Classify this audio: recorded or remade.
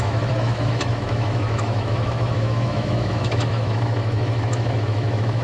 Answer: remade